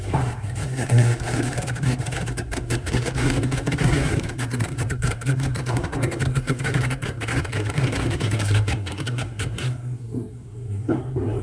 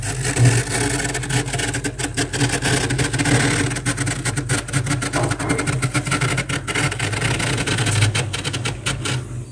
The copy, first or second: first